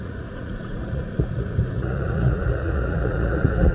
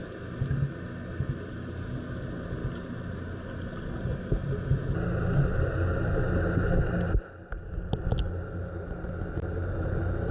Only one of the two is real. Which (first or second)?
second